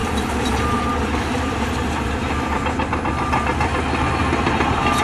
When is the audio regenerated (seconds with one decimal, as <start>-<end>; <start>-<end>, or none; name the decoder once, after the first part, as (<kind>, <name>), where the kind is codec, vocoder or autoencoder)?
0.0-3.0 (vocoder, BigVGAN v2)